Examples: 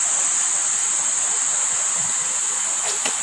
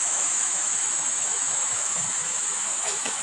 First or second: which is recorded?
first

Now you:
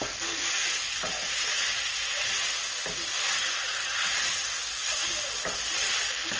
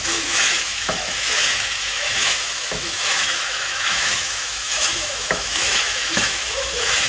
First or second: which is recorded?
first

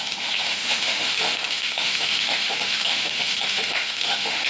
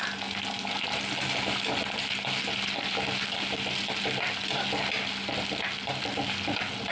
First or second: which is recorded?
second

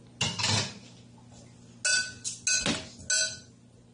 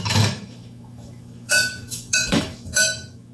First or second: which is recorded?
first